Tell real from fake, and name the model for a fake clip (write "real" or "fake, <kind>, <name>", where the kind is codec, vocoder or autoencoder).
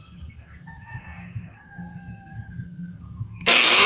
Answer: fake, codec, SNAC